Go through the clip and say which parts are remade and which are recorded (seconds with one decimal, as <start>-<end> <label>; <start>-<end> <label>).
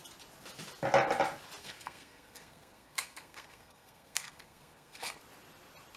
0.0-1.6 recorded; 1.6-5.2 remade; 5.2-6.0 recorded